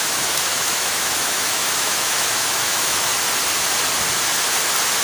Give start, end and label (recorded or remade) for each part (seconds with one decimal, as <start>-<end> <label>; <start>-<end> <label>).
0.0-3.1 remade; 3.1-5.0 recorded